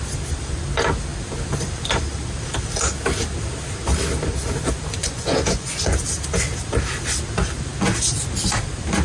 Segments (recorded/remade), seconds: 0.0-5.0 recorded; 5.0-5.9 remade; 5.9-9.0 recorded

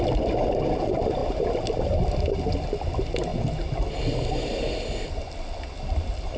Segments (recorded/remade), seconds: 0.0-6.4 recorded

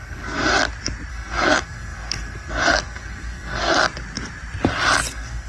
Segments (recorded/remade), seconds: 0.0-0.5 remade; 0.5-1.1 recorded; 1.1-3.7 remade; 3.7-5.1 recorded; 5.1-5.5 remade

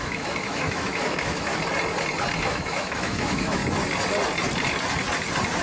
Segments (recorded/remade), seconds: 0.0-1.5 remade; 1.5-2.4 recorded; 2.4-3.6 remade; 3.6-5.6 recorded